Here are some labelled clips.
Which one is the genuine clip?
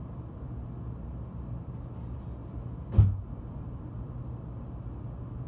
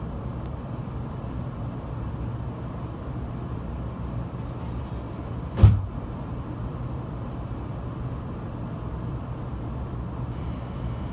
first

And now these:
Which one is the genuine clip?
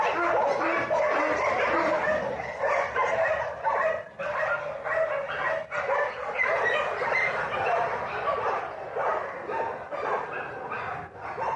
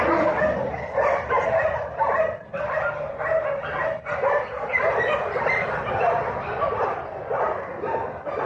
first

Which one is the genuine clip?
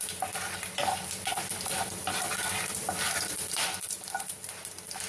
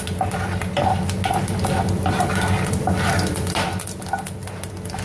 second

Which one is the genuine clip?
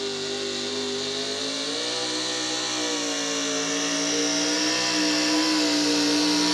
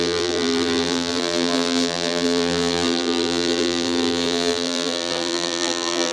first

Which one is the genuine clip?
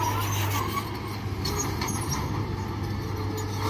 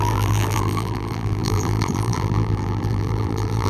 first